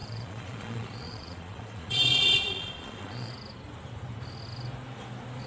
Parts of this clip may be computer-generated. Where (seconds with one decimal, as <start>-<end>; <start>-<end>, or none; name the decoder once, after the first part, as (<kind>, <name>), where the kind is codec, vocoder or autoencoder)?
0.0-3.3 (vocoder, Vocos)